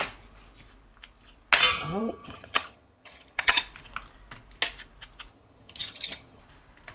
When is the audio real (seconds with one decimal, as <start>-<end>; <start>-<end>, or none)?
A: 0.0-1.7; 3.6-5.3; 6.4-6.9